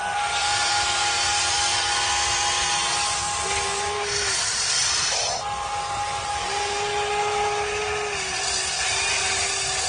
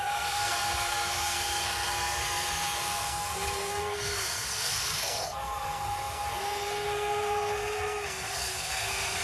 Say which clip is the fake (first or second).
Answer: second